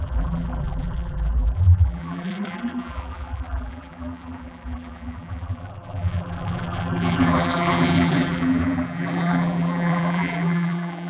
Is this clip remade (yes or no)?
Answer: yes